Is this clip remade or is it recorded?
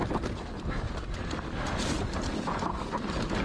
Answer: remade